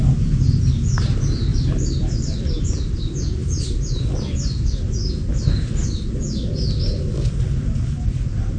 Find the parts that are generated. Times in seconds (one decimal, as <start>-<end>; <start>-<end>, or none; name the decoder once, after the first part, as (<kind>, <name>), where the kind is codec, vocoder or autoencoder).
1.5-3.0 (vocoder, BigVGAN v2)